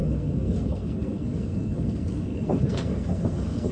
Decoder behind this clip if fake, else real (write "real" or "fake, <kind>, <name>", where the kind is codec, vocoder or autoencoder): fake, codec, SNAC